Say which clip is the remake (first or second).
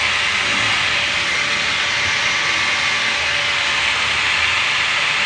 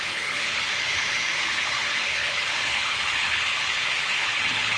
second